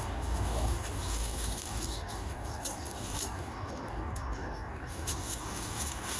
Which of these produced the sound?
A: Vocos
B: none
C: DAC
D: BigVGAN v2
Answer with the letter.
C